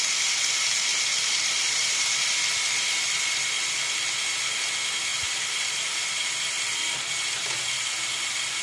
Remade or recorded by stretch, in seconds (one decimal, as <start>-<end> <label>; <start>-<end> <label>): 0.0-0.9 recorded; 0.9-2.4 remade; 2.4-5.1 recorded; 5.1-6.1 remade; 6.1-8.6 recorded

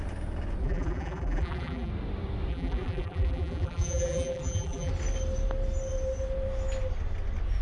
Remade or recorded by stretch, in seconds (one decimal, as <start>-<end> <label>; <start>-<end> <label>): 0.0-0.6 recorded; 0.6-1.9 remade; 1.9-2.5 recorded; 2.5-4.9 remade; 4.9-7.6 recorded

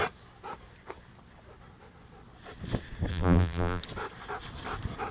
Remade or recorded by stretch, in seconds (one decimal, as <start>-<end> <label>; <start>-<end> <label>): 0.0-3.1 recorded; 3.1-3.8 remade; 3.8-5.1 recorded

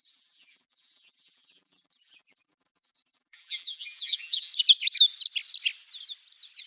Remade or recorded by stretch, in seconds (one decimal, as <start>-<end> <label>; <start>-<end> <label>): 0.0-4.5 remade; 4.5-6.7 recorded

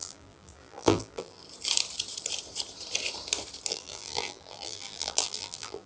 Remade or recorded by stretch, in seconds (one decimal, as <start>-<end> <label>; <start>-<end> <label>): 0.0-1.4 remade; 1.4-3.7 recorded; 3.7-5.9 remade

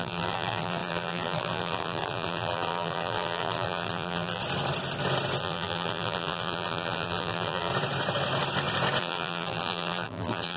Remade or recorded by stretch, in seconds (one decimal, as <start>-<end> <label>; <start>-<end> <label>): 0.0-4.4 remade; 4.4-5.4 recorded; 5.4-7.7 remade; 7.7-9.0 recorded; 9.0-10.6 remade

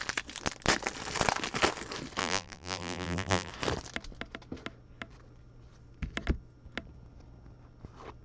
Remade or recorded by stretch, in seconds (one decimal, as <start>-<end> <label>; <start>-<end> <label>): 0.0-2.2 recorded; 2.2-3.5 remade; 3.5-8.2 recorded

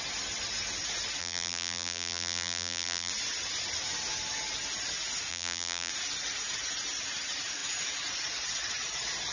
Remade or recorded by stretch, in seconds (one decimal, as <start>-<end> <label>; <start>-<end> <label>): 0.0-1.2 recorded; 1.2-3.1 remade; 3.1-5.3 recorded; 5.3-5.9 remade; 5.9-9.3 recorded